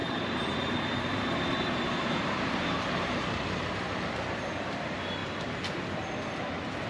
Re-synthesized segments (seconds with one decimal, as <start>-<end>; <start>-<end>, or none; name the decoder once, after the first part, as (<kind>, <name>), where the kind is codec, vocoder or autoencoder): 0.0-4.1 (vocoder, BigVGAN v2); 5.2-6.1